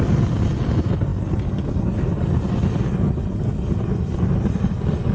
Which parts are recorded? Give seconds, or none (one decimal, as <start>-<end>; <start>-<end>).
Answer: 0.0-5.1